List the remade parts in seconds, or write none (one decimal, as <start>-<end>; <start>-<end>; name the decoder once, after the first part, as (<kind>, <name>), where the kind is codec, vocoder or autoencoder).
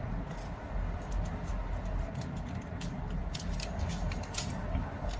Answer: none